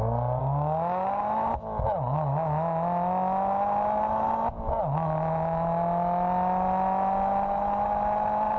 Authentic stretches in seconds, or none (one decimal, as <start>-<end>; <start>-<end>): 0.0-0.4; 1.2-8.6